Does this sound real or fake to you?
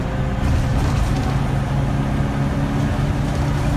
real